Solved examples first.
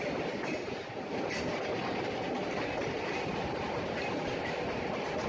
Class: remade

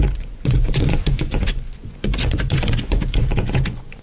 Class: remade